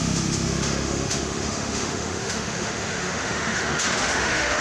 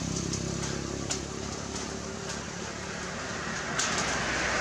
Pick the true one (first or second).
second